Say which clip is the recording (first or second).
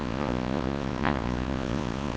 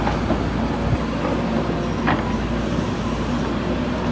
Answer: second